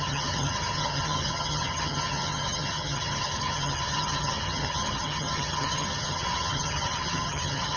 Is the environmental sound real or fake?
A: fake